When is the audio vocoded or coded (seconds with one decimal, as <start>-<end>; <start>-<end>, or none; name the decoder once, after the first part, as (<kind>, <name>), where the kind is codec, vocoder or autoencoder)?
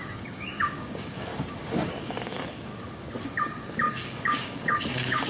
0.0-1.3 (codec, DAC); 2.0-2.7; 3.2-5.3